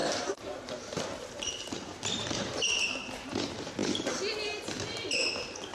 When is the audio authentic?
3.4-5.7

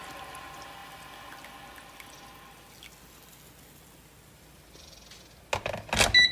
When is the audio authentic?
0.0-6.3

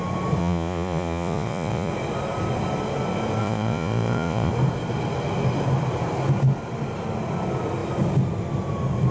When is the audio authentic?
0.0-0.4; 1.9-3.4; 4.5-9.1

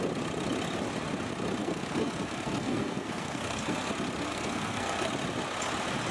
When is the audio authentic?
0.0-1.6; 3.9-4.3; 5.1-6.1

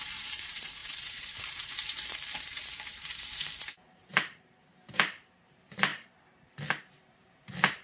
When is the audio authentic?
3.1-3.6; 5.9-7.1

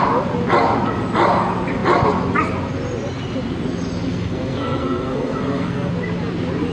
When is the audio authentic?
0.0-4.1; 5.9-6.7

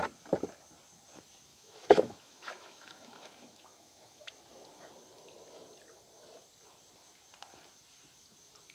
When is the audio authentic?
0.0-1.5; 4.3-8.7

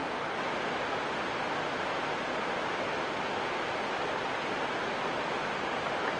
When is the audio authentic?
0.0-6.2